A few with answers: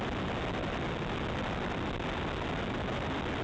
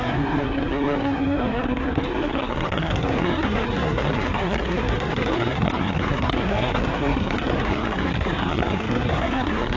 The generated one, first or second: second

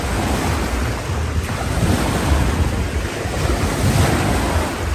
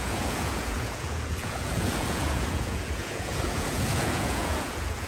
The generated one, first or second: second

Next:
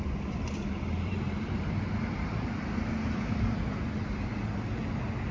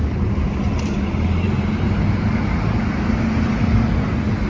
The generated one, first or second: first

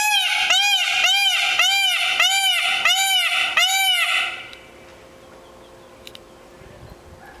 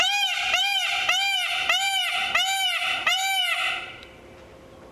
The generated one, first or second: second